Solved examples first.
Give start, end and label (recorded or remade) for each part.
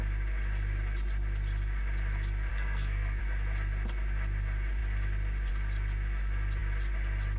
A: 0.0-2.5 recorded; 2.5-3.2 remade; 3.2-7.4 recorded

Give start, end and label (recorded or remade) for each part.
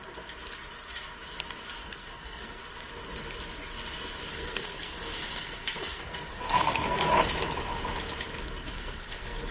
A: 0.0-1.8 recorded; 1.8-2.6 remade; 2.6-4.3 recorded; 4.3-7.1 remade; 7.1-8.7 recorded; 8.7-9.5 remade